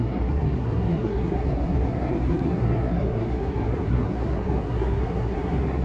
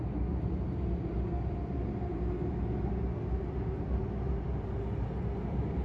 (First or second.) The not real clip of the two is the first